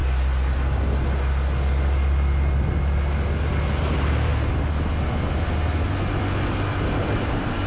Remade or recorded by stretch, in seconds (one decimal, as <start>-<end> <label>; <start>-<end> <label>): 0.0-3.8 recorded; 3.8-4.3 remade; 4.3-7.0 recorded; 7.0-7.7 remade